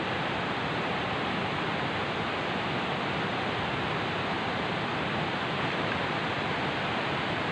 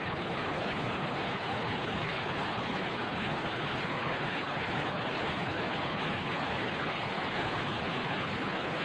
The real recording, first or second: first